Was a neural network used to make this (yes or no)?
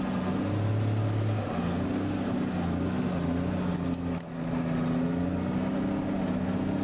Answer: no